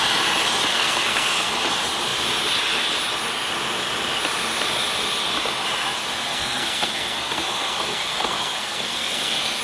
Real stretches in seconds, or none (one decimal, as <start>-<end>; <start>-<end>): 0.0-0.7; 1.5-6.3